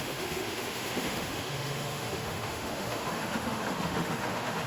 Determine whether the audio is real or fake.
fake